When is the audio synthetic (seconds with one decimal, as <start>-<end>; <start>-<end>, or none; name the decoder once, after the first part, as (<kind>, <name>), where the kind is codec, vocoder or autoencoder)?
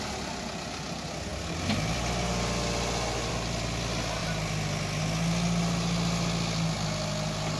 none